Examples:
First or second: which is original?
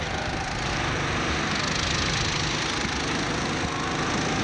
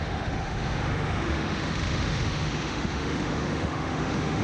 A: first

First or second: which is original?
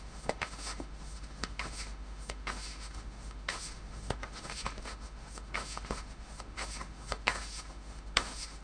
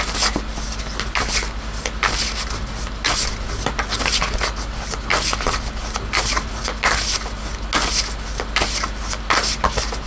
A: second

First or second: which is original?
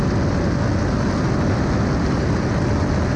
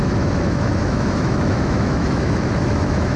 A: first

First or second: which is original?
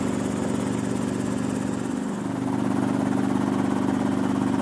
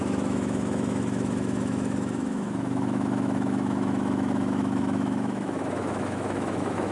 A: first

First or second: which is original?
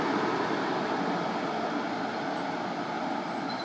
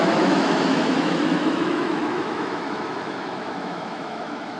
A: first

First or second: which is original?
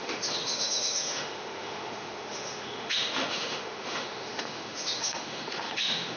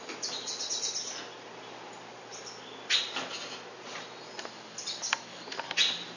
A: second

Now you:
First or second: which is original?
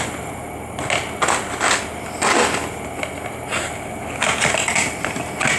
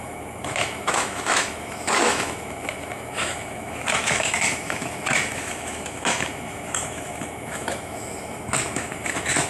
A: first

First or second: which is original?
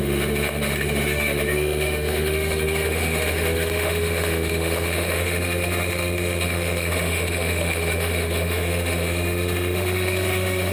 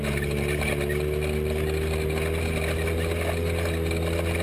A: second